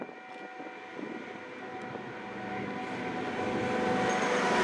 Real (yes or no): yes